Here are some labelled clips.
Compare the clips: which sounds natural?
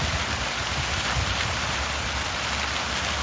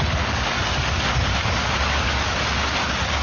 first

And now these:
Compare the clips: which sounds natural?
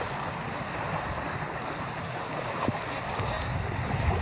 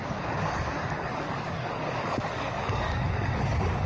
first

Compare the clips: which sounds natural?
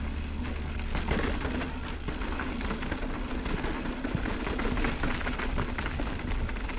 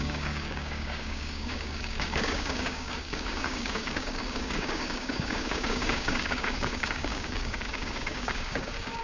first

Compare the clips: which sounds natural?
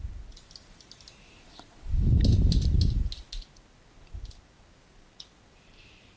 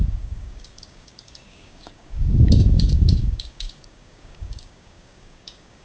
first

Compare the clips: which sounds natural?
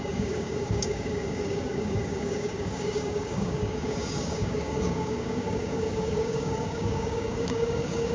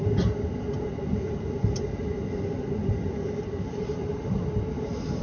second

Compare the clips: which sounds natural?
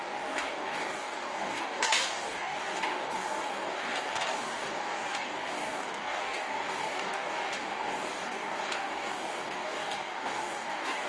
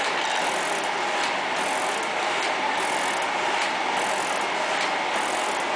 second